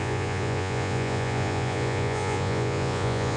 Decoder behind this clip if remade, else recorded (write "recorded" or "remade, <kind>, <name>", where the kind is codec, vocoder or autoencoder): remade, vocoder, Vocos